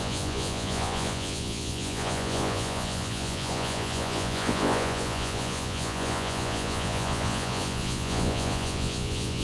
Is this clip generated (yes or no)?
yes